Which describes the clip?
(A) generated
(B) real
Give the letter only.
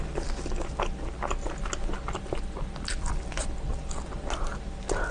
B